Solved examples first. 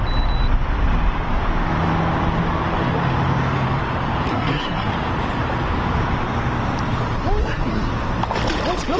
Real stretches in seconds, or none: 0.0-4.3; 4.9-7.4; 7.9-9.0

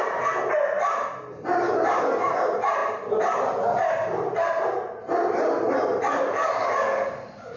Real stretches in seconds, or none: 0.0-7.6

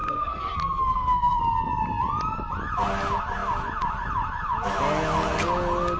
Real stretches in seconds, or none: 1.4-6.0

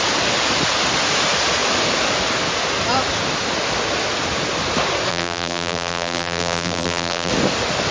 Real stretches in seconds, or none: 0.0-5.1; 7.3-7.9